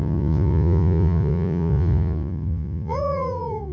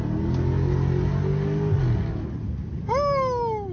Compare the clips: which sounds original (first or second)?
second